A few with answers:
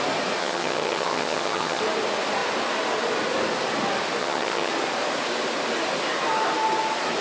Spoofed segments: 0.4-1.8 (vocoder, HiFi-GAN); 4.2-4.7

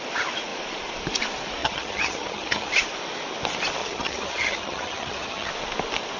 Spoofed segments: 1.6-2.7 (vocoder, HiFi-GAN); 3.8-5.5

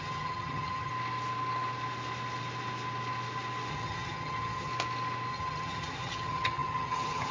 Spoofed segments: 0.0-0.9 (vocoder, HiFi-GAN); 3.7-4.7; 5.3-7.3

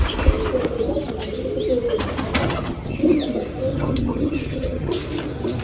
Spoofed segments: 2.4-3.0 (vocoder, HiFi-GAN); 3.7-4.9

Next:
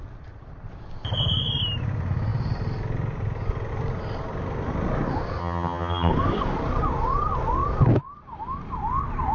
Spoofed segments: 5.4-6.1 (vocoder, HiFi-GAN)

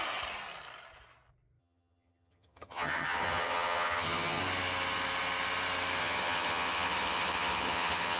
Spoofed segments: 1.6-4.4 (vocoder, HiFi-GAN); 6.0-8.2

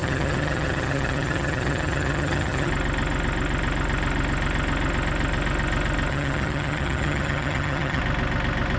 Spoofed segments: 0.0-2.7 (vocoder, HiFi-GAN); 6.1-8.0

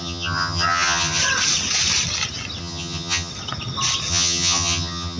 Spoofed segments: 0.0-1.2 (vocoder, HiFi-GAN); 2.6-3.3; 4.1-5.2